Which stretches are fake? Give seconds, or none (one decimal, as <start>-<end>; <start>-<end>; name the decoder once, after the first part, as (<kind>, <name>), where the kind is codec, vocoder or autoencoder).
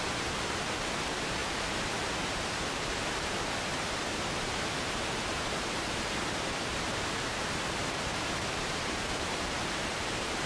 0.0-10.5 (vocoder, BigVGAN v2)